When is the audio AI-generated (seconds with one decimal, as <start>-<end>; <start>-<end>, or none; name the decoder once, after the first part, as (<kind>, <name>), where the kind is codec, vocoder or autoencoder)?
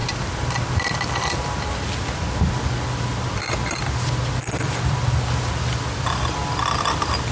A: none